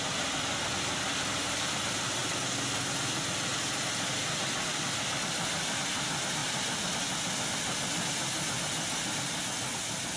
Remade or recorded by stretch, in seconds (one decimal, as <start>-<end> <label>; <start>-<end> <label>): 0.0-10.2 recorded